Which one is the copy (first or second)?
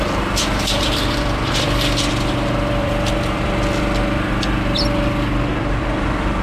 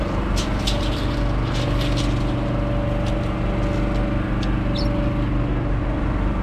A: first